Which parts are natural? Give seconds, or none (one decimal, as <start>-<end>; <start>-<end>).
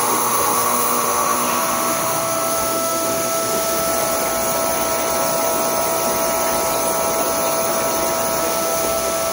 3.9-8.4